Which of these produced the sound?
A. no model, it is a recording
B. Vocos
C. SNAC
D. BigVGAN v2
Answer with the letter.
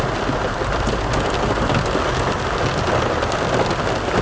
A